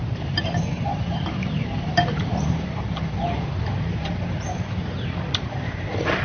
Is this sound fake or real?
fake